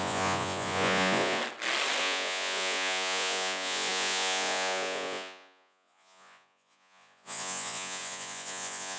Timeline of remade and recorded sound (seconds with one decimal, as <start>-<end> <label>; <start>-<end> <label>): 0.0-1.4 remade; 1.4-2.0 recorded; 2.0-9.0 remade